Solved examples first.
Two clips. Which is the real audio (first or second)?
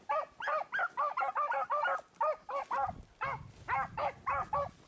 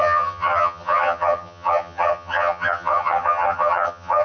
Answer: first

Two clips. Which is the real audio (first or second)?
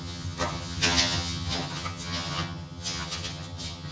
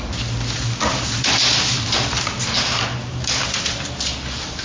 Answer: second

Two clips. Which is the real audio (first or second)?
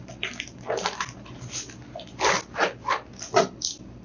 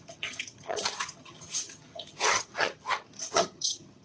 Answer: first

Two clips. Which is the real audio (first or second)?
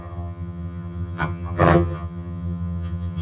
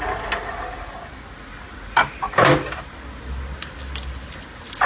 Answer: second